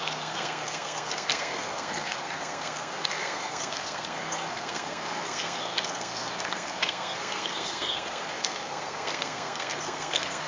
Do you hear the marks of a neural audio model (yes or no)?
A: yes